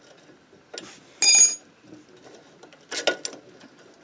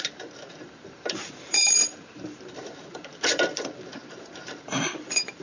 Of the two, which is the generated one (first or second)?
second